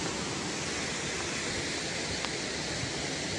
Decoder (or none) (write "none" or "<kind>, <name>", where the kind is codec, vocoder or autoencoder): none